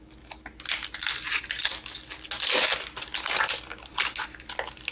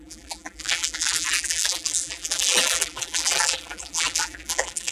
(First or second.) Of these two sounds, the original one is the first